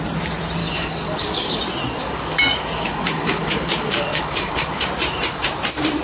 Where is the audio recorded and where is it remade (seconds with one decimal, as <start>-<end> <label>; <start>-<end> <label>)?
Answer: 0.0-0.6 recorded; 0.6-1.6 remade; 1.6-2.0 recorded; 2.0-4.9 remade; 4.9-6.0 recorded